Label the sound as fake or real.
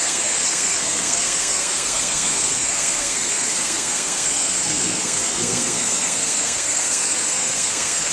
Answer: fake